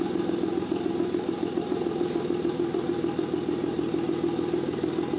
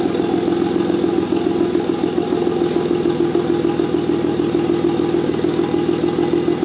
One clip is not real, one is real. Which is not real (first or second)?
first